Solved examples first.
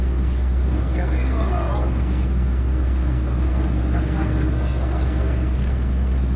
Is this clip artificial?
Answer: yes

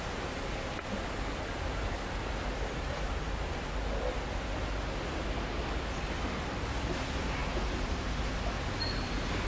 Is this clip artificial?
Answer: no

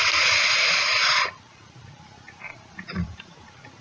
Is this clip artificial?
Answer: yes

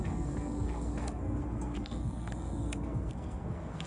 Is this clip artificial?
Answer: yes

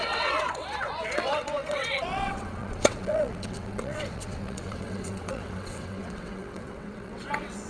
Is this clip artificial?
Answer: yes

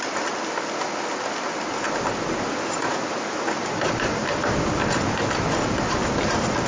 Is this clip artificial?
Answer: no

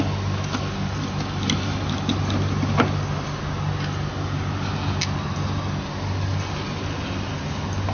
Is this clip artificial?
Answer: no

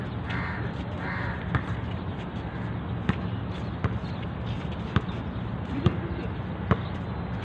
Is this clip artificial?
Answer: no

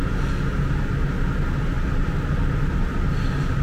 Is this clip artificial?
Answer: no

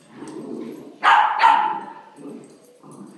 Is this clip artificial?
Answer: no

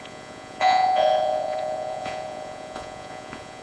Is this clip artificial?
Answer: yes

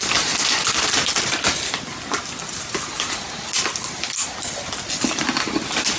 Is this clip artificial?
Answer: no